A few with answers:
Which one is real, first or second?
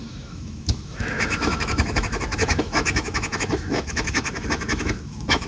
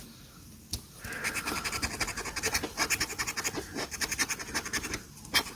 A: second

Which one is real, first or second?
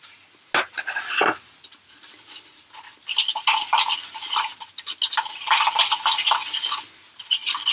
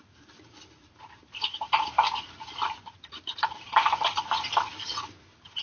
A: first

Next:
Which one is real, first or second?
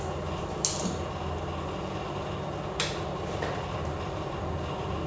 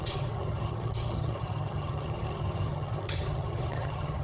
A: first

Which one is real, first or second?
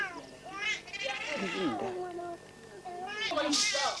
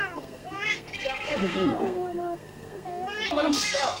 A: first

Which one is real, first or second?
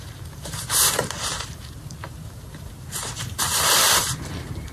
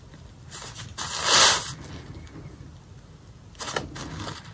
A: second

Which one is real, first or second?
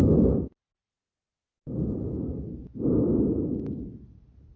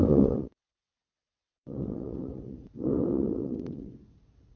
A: first